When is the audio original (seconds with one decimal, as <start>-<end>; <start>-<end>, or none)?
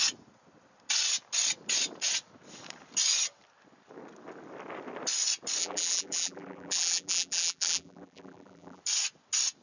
0.0-5.6; 8.8-9.6